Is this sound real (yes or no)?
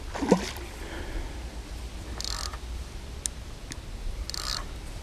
no